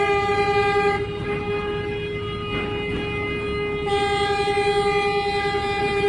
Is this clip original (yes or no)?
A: yes